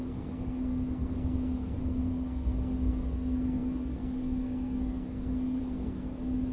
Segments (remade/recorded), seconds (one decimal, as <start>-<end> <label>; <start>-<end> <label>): 0.0-6.5 remade